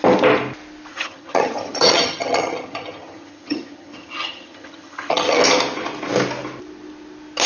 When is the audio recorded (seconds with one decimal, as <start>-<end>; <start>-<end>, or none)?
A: 0.0-0.9; 5.4-7.5